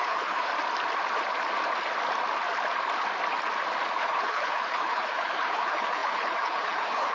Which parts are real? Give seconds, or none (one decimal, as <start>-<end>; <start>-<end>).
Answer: 0.5-4.0